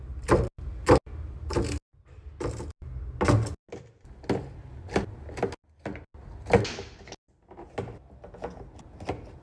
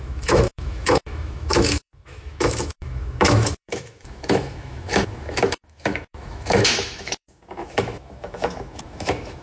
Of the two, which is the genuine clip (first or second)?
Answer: first